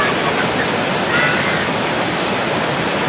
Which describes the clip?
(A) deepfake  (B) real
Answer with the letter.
B